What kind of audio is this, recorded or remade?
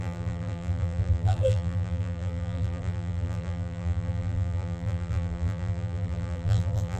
remade